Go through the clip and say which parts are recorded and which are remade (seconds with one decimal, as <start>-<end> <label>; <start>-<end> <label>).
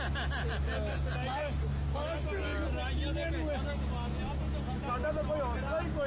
0.0-6.1 recorded